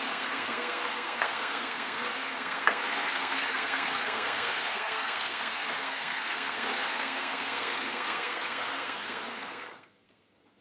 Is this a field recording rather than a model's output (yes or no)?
no